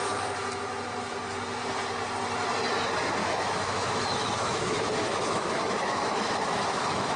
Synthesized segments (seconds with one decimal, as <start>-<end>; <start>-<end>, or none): 3.2-7.2